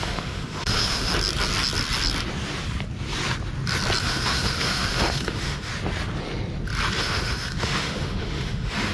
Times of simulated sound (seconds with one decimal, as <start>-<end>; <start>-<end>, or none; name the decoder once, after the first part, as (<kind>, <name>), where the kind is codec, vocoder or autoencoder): 0.0-1.1 (autoencoder, DAC-VAE); 4.0-5.7; 7.0-8.9

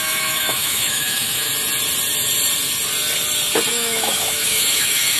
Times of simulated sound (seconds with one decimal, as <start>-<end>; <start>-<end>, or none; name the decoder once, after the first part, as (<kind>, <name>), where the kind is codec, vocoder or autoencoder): 0.0-1.5 (autoencoder, DAC-VAE); 3.7-5.2

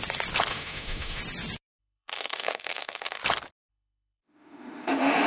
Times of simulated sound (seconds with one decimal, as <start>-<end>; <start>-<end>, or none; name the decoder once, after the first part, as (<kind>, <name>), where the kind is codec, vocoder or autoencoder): 0.5-1.2 (autoencoder, DAC-VAE); 1.8-3.2; 3.7-5.3

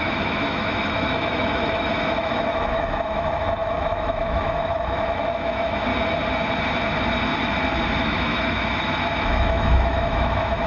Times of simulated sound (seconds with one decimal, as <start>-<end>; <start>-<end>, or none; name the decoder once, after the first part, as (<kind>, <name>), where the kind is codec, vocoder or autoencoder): 0.0-5.9 (autoencoder, DAC-VAE); 8.0-10.7

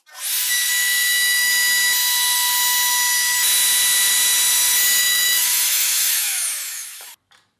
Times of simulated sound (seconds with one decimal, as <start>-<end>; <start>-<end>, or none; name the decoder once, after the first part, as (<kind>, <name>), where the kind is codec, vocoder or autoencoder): 0.8-1.5 (autoencoder, DAC-VAE); 5.0-7.1